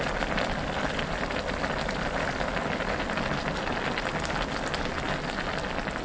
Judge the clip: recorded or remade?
recorded